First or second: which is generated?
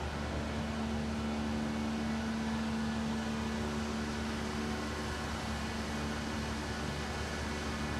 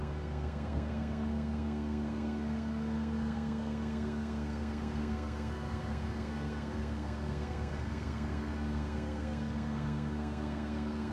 second